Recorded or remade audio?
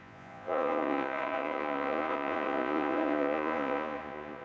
remade